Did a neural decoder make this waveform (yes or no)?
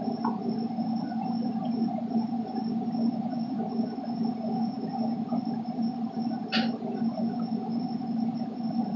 no